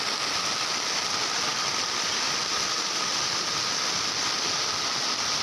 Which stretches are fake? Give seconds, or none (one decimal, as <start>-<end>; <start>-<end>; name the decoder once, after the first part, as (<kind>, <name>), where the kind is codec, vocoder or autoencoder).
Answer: 1.5-3.9 (vocoder, BigVGAN v2)